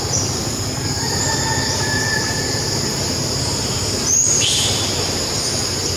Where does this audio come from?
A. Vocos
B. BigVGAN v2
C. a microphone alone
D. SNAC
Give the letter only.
C